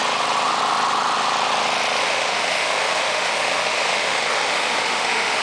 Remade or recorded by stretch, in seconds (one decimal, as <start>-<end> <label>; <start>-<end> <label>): 0.0-2.0 recorded; 2.0-5.4 remade